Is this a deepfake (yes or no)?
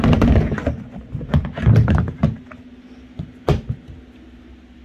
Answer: no